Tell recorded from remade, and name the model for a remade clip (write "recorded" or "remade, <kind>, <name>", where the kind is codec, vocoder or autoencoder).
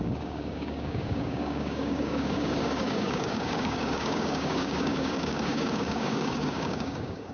remade, codec, DAC